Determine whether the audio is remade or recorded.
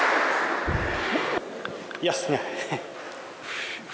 recorded